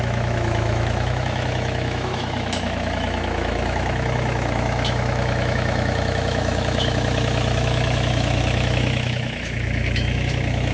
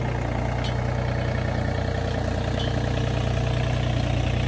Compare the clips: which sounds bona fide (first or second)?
second